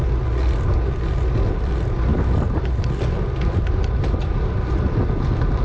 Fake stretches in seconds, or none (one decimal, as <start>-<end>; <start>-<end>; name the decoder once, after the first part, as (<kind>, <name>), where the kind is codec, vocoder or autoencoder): 2.1-2.9 (vocoder, BigVGAN v2)